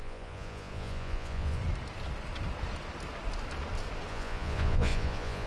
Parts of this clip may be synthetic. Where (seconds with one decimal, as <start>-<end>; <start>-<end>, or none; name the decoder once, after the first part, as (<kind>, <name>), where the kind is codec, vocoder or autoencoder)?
0.0-1.6 (vocoder, Vocos); 4.1-5.5